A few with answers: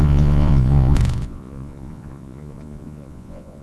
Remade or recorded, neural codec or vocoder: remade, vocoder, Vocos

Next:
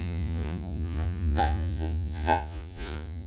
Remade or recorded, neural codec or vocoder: remade, vocoder, Vocos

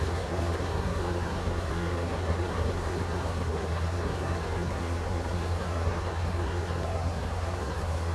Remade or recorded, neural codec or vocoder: remade, codec, SNAC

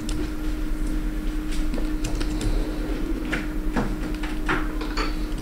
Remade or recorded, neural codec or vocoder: recorded